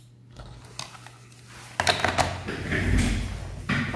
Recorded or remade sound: recorded